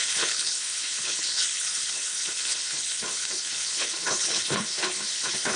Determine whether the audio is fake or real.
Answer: fake